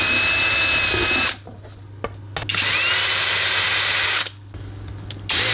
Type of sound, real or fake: real